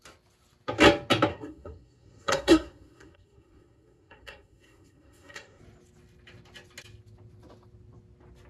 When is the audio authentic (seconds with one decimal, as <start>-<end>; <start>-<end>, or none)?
0.0-1.3; 5.6-8.5